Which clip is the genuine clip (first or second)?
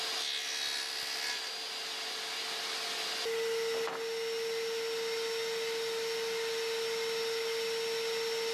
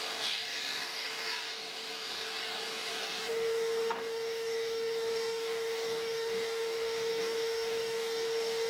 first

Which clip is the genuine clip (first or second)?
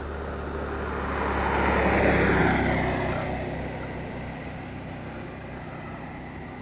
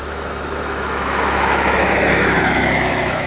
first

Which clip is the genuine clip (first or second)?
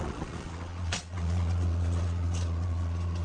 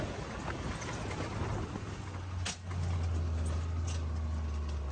second